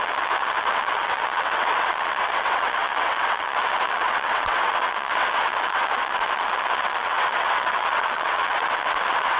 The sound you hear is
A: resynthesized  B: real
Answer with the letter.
A